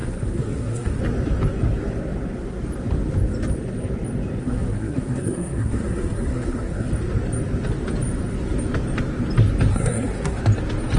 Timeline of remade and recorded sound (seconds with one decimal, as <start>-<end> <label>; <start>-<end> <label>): 0.0-1.0 remade; 1.0-4.4 recorded; 4.4-6.9 remade; 6.9-9.7 recorded; 9.7-10.4 remade; 10.4-11.0 recorded